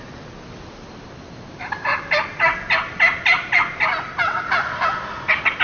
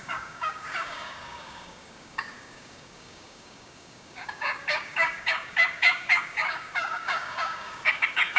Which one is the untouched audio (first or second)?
first